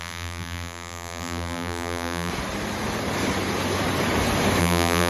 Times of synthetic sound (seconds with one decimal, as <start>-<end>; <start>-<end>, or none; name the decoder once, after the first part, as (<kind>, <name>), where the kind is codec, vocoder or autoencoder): 0.0-2.3 (vocoder, BigVGAN v2); 4.6-5.1